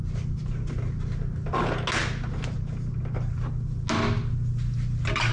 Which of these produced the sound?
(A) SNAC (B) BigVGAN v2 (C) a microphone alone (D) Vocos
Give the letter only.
C